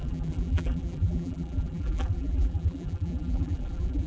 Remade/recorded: remade